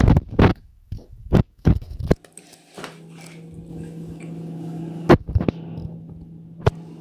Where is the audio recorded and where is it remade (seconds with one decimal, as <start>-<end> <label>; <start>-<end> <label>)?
0.0-0.5 recorded; 0.5-2.0 remade; 2.0-3.7 recorded; 3.7-5.1 remade; 5.1-7.0 recorded